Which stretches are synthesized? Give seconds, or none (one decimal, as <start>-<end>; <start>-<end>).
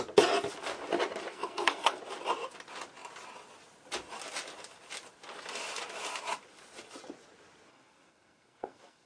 1.3-2.0; 7.7-9.1